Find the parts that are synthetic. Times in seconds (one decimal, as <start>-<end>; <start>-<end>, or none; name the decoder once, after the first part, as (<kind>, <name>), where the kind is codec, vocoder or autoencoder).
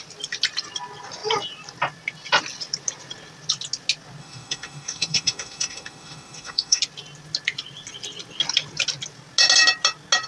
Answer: 4.2-6.8 (autoencoder, DAC-VAE)